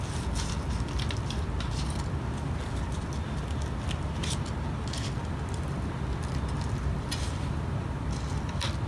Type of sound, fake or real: real